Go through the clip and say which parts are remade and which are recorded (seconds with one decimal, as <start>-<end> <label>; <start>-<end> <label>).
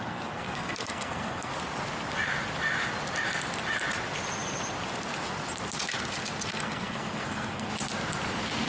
0.0-1.5 remade; 1.5-6.5 recorded; 6.5-7.7 remade; 7.7-8.7 recorded